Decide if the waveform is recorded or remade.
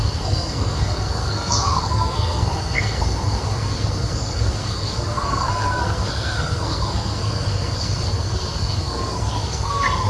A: remade